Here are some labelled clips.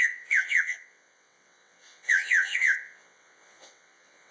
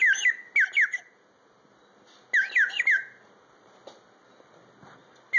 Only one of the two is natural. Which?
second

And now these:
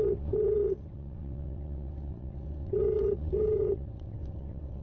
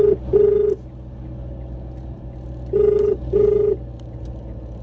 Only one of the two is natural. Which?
second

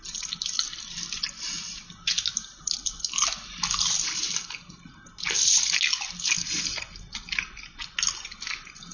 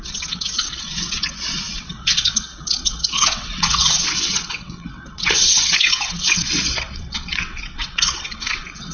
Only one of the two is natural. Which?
first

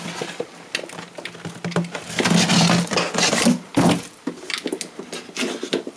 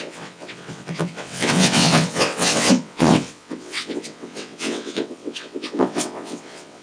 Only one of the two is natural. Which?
first